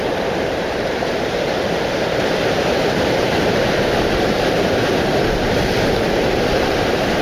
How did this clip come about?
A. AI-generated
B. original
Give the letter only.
A